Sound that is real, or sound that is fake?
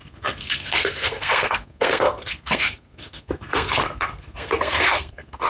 fake